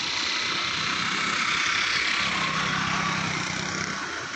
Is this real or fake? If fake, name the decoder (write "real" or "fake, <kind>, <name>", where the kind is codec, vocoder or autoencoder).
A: real